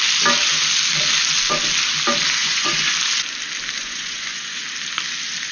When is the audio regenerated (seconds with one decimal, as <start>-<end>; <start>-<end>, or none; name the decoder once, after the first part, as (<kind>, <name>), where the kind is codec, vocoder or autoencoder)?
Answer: 2.4-2.9 (vocoder, Vocos); 3.8-4.6